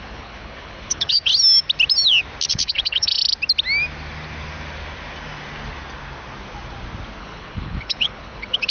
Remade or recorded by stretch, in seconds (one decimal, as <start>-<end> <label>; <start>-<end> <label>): 0.0-1.3 remade; 1.3-2.5 recorded; 2.5-3.2 remade; 3.2-7.2 recorded; 7.2-8.7 remade